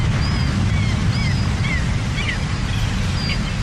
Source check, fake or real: real